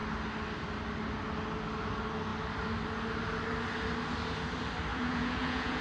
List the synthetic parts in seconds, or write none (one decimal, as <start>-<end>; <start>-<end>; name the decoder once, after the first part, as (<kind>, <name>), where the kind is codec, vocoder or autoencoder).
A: 4.9-5.8 (vocoder, Vocos)